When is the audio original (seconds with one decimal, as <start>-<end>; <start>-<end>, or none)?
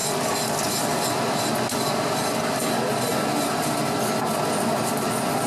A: 0.0-5.5